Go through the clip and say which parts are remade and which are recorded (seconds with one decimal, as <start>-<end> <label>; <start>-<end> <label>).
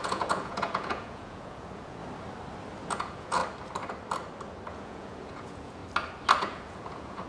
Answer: 0.0-2.0 remade; 2.0-2.9 recorded; 2.9-3.4 remade; 3.4-4.7 recorded; 4.7-5.8 remade; 5.8-6.4 recorded; 6.4-7.3 remade